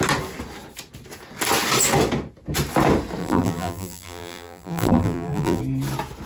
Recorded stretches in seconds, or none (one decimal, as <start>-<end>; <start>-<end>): 0.0-3.2; 5.6-6.3